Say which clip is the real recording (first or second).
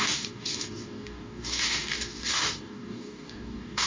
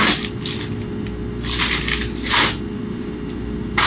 second